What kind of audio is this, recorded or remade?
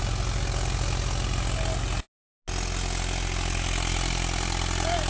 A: recorded